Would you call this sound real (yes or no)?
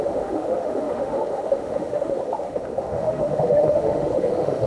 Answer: no